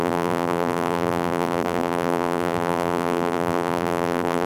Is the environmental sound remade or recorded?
remade